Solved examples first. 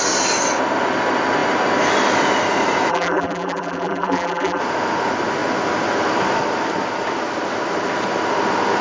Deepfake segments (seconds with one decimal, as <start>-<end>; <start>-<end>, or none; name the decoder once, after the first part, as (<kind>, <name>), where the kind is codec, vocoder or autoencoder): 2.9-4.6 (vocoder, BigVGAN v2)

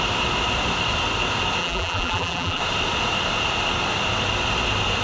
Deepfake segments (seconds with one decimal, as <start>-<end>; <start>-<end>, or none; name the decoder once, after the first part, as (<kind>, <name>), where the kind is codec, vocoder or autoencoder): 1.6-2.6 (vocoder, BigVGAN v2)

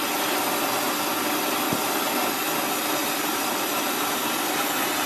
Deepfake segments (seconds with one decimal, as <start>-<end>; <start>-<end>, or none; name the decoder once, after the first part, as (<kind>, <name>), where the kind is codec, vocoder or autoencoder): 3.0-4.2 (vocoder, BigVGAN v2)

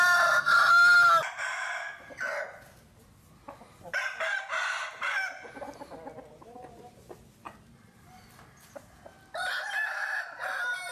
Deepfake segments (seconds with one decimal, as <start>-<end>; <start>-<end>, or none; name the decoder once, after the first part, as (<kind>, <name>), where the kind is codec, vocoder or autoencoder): 3.4-5.5 (vocoder, BigVGAN v2)